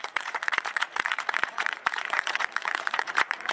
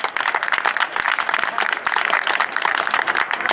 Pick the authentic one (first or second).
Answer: second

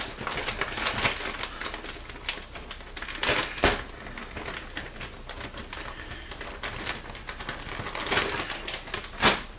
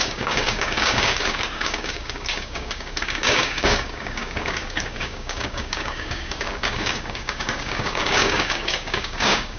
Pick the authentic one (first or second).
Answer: first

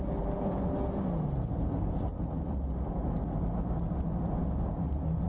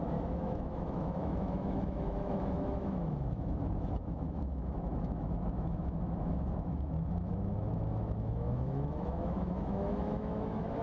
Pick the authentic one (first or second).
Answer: first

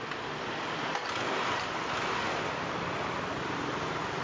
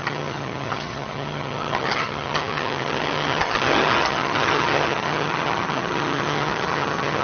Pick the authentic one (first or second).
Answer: first